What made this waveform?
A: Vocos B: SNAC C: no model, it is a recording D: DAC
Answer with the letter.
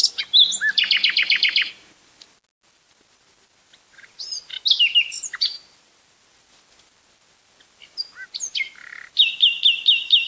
C